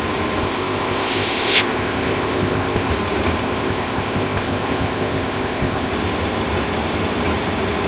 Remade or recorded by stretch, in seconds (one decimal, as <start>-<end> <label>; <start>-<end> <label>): 0.0-0.4 recorded; 0.4-2.9 remade; 2.9-3.4 recorded; 3.4-5.9 remade; 5.9-7.9 recorded